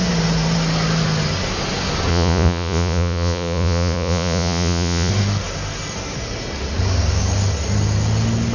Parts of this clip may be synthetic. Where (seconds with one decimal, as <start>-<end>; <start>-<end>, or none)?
2.1-5.1